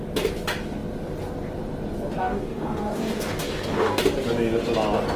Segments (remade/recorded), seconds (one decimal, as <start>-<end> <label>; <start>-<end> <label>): 0.0-2.2 recorded; 2.2-4.0 remade; 4.0-5.2 recorded